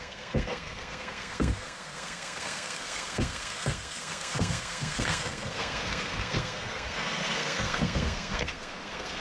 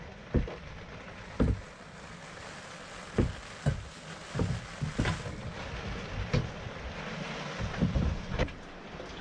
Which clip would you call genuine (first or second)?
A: second